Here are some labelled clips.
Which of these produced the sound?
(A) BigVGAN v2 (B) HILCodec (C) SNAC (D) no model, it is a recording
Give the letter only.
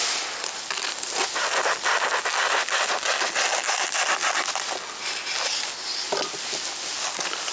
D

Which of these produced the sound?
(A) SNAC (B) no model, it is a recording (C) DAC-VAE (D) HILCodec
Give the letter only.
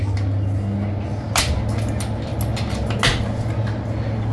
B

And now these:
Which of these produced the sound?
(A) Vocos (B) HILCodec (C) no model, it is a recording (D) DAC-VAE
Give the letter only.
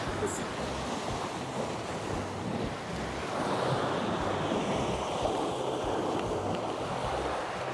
C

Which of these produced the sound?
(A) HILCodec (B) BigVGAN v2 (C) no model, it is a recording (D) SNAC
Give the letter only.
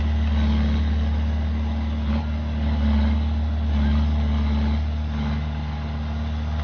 C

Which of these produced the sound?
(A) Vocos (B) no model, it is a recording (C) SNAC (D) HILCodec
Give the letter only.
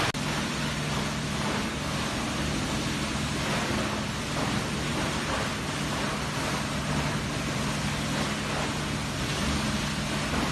B